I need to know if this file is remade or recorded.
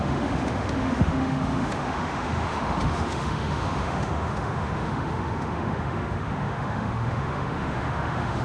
remade